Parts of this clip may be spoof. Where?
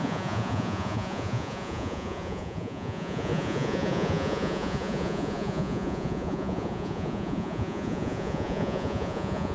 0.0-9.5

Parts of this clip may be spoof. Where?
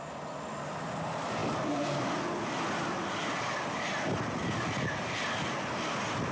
1.4-4.0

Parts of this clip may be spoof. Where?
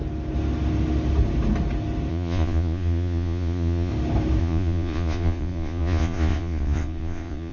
2.1-3.9; 4.4-7.5